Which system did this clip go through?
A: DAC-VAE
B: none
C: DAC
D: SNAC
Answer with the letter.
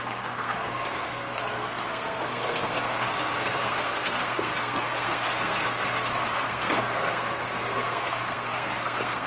D